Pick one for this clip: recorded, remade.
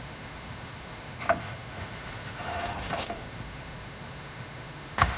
remade